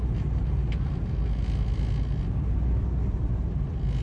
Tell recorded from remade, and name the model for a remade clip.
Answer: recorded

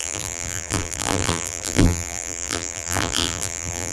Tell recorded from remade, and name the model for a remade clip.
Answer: remade, vocoder, BigVGAN v2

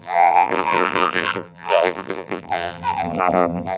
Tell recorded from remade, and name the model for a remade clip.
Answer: remade, vocoder, BigVGAN v2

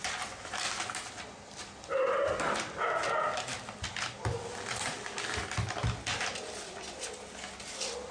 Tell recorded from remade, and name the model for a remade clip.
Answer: recorded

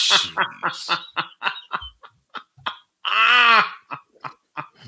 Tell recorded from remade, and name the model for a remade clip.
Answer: recorded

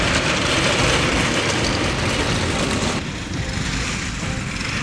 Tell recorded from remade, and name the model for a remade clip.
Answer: remade, vocoder, BigVGAN v2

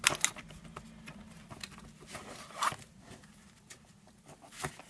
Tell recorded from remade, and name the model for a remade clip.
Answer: recorded